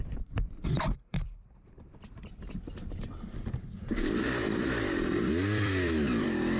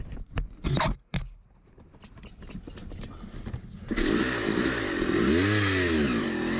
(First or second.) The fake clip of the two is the first